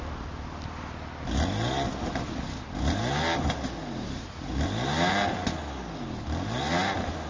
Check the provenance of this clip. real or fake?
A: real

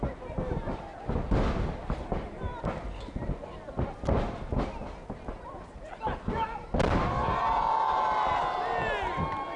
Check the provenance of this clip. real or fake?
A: real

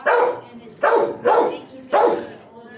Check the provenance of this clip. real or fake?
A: real